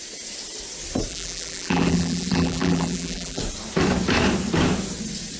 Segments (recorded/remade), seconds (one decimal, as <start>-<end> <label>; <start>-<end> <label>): 0.0-1.1 recorded; 1.1-3.4 remade; 3.4-5.4 recorded